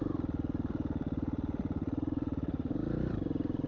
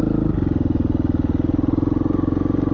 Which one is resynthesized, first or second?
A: first